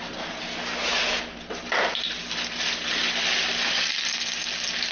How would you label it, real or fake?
real